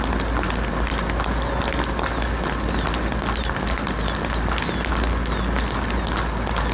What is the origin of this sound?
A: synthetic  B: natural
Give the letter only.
B